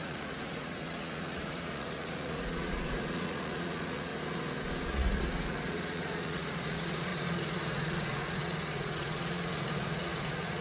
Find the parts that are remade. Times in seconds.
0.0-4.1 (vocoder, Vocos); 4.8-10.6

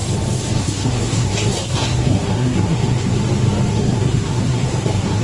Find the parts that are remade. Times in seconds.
0.6-3.2 (codec, SNAC); 3.7-5.2

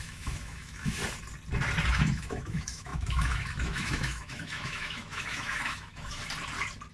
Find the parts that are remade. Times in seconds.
0.0-1.0 (autoencoder, DAC-VAE); 1.9-6.2